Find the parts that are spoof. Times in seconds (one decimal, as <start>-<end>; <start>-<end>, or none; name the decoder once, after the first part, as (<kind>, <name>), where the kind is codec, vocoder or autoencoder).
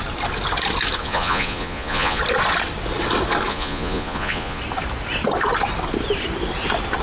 1.0-2.2 (vocoder, Vocos); 3.5-4.6